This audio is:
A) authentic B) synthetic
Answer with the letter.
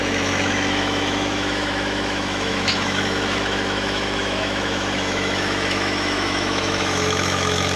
B